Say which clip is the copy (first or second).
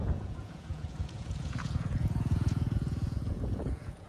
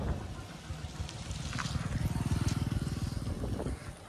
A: first